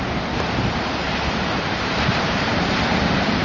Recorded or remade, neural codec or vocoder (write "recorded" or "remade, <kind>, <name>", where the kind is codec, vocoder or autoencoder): remade, vocoder, BigVGAN v2